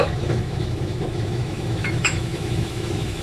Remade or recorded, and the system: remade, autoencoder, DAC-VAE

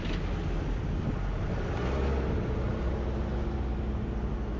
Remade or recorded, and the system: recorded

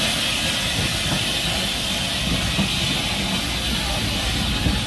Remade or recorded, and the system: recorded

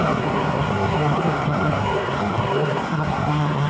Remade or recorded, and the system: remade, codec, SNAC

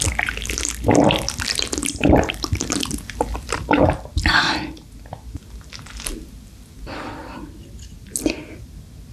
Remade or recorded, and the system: recorded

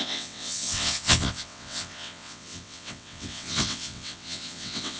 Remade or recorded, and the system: remade, vocoder, WaveNeXt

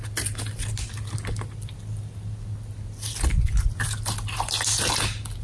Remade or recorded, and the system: recorded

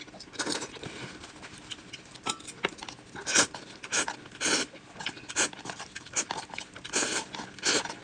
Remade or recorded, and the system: recorded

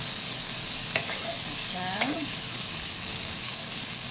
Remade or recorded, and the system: remade, codec, DAC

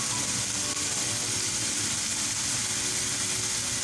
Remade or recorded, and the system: recorded